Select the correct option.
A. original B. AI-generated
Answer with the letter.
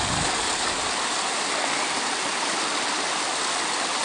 A